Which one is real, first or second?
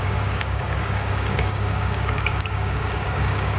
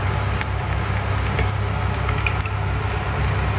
second